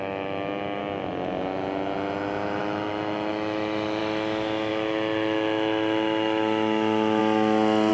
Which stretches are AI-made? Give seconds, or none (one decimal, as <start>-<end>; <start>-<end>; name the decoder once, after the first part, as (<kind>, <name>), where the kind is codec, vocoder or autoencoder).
0.0-0.8 (autoencoder, DAC-VAE); 2.6-4.0; 4.7-7.2